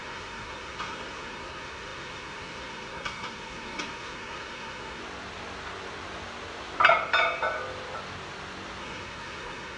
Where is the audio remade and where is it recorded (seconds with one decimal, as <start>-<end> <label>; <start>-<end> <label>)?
0.0-5.0 remade; 5.0-8.8 recorded; 8.8-9.8 remade